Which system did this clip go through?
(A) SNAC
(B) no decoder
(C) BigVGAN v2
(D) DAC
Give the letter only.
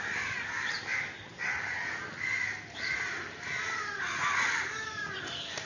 B